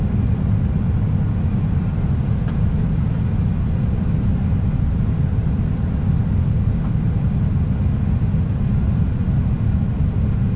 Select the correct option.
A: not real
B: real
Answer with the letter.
B